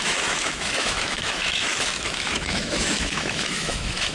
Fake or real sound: fake